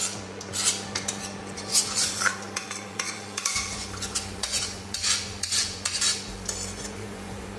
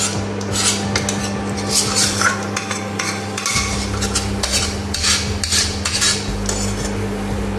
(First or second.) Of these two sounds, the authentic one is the second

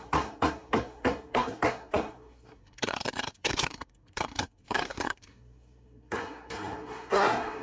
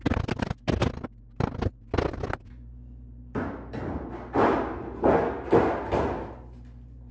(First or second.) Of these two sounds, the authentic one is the second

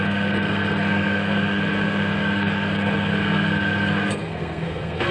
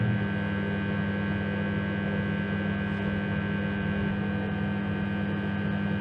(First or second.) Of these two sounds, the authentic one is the second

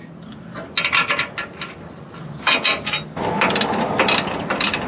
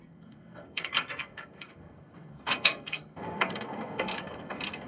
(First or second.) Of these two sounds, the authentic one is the first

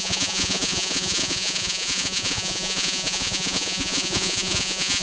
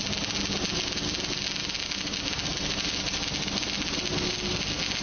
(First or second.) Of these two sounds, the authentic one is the second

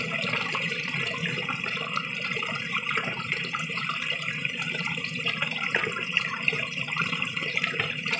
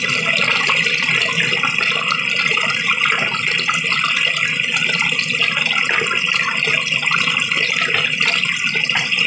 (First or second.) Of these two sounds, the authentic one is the second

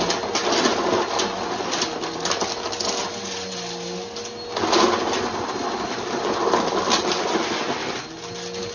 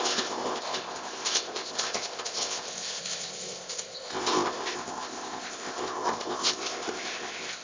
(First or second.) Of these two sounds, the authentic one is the first